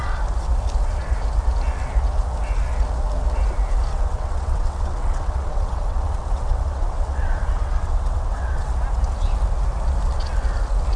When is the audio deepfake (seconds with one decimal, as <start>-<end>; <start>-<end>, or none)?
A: 3.9-8.7